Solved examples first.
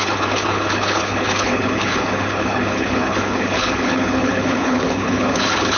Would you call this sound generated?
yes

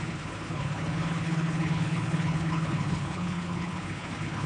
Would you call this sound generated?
yes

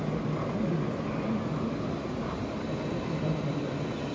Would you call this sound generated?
no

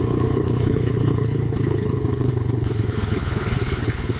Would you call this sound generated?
yes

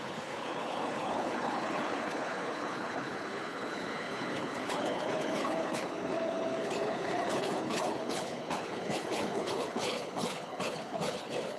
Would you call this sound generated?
yes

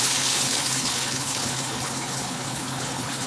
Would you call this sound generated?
yes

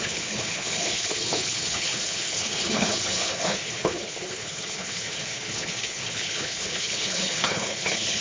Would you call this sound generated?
yes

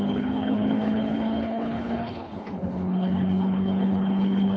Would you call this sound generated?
yes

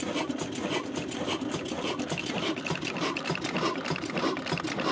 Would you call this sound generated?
no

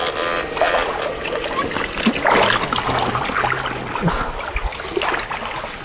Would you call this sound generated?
no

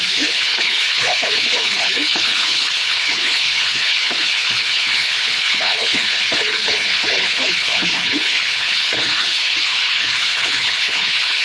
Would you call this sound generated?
yes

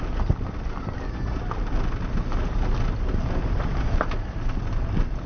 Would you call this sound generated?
no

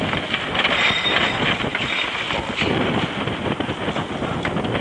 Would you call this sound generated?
no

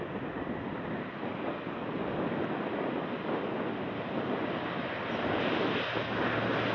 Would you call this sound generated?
no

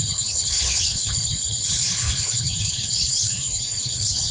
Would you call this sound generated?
yes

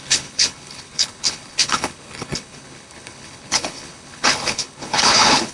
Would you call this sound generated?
yes